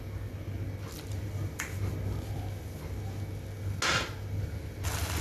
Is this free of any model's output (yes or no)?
yes